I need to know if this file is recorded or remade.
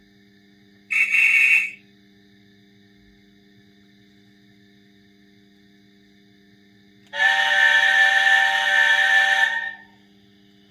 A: recorded